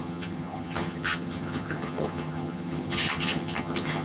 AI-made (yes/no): yes